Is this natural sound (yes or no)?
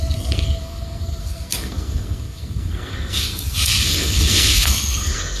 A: no